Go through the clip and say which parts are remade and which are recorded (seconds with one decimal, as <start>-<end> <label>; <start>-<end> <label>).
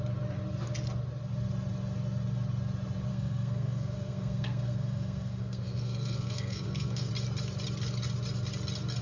0.0-3.1 recorded; 3.1-7.1 remade; 7.1-9.0 recorded